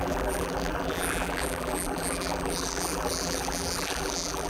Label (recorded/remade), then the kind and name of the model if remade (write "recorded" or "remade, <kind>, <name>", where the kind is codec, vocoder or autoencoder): remade, vocoder, BigVGAN v2